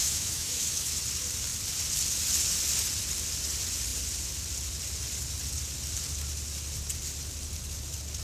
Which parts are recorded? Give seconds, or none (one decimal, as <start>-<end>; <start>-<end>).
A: 1.0-8.2